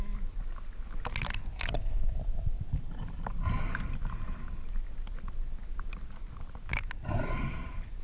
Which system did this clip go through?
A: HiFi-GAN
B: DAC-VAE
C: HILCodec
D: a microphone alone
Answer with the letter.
D